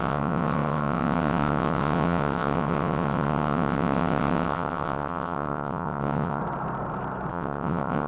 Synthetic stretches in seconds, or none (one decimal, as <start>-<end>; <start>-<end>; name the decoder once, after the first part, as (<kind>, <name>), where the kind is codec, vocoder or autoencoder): 0.0-6.4 (vocoder, WaveNeXt); 7.3-8.1